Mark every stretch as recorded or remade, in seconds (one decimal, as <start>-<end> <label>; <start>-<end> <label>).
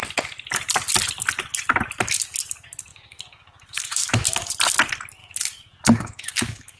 0.0-2.9 recorded; 2.9-4.5 remade; 4.5-5.2 recorded; 5.2-6.8 remade